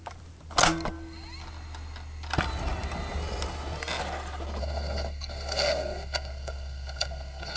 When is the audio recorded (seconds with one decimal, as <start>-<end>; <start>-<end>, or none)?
0.0-4.6